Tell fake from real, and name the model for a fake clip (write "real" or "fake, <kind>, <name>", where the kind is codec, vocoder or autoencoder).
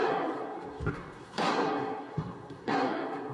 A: fake, codec, SNAC